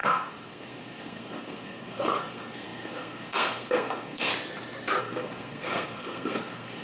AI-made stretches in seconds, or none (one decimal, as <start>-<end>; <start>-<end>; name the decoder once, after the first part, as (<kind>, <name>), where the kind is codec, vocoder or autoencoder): 0.0-4.3 (codec, SNAC); 5.0-6.8